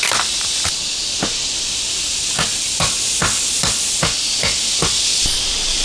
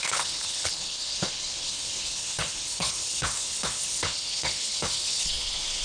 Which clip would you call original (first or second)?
first